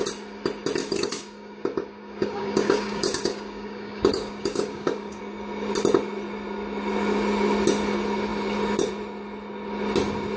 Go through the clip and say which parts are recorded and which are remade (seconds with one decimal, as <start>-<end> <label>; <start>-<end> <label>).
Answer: 0.0-0.8 recorded; 0.8-5.2 remade; 5.2-10.4 recorded